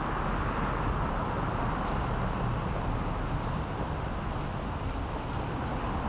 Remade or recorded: recorded